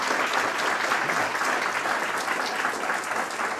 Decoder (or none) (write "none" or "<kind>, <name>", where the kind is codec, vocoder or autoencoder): none